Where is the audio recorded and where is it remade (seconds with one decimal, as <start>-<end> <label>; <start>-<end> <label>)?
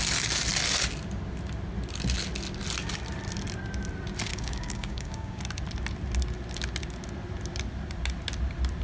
0.0-4.3 recorded; 4.3-5.4 remade; 5.4-8.8 recorded